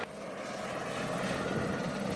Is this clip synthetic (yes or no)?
no